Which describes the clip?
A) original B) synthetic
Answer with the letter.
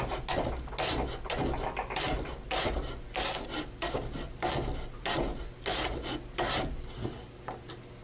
A